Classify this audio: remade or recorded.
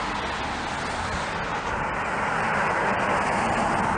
recorded